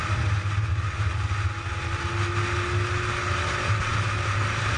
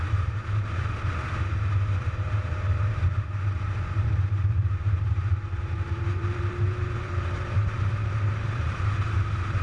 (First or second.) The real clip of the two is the first